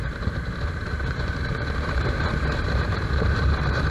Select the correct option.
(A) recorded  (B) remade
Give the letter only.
B